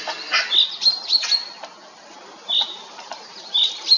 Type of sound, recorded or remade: recorded